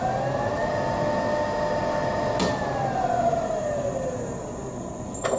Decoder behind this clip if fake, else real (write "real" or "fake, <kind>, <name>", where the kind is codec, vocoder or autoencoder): real